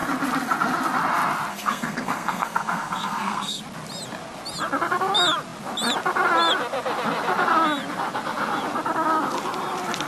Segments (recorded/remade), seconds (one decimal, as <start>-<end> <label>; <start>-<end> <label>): 0.0-1.5 recorded; 1.5-3.6 remade; 3.6-10.1 recorded

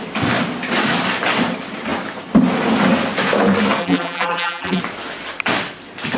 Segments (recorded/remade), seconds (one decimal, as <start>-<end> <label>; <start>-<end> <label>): 0.0-3.8 recorded; 3.8-4.8 remade; 4.8-6.2 recorded

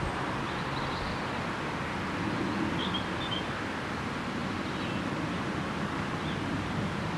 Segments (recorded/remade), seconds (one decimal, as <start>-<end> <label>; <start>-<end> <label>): 0.0-7.2 recorded

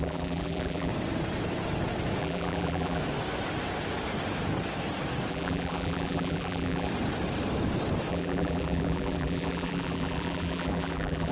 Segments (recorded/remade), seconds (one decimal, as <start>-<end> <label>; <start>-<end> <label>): 0.0-0.9 remade; 0.9-2.2 recorded; 2.2-3.0 remade; 3.0-5.3 recorded; 5.3-6.9 remade; 6.9-8.1 recorded; 8.1-11.3 remade

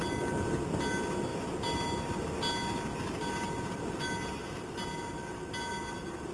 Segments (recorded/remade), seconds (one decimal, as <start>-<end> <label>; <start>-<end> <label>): 0.0-6.3 recorded

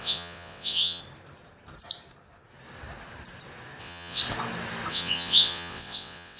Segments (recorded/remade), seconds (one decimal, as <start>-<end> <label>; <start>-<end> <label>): 0.0-1.0 remade; 1.0-3.8 recorded; 3.8-4.2 remade; 4.2-4.9 recorded; 4.9-6.4 remade